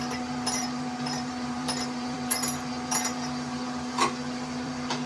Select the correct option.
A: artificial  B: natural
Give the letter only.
A